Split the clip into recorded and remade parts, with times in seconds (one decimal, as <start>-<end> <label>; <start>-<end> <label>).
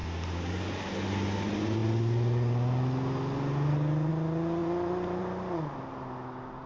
0.0-4.6 recorded; 4.6-5.2 remade; 5.2-6.7 recorded